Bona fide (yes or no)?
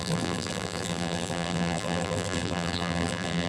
no